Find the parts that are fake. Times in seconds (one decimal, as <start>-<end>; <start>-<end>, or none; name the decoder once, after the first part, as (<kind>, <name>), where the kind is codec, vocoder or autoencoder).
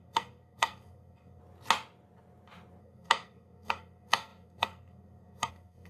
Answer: 0.0-1.4 (codec, SNAC); 2.8-5.9